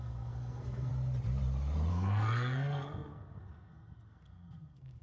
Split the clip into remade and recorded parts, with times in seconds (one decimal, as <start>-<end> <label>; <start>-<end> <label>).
0.0-0.9 remade; 0.9-1.9 recorded; 1.9-5.0 remade